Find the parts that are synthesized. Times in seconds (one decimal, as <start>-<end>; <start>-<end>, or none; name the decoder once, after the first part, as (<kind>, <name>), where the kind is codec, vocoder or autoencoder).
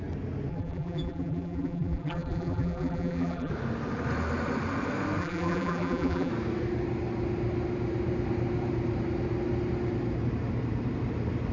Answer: 0.5-3.5 (vocoder, BigVGAN v2); 5.2-6.3